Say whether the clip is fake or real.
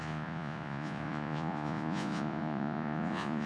fake